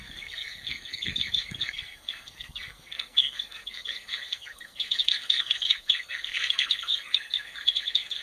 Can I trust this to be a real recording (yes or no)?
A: no